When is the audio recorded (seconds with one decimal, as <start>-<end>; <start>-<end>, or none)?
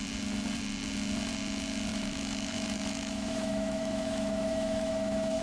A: 0.0-1.9